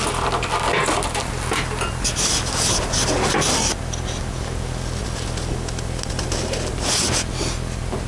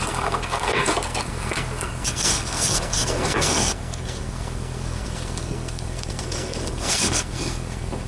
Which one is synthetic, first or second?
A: second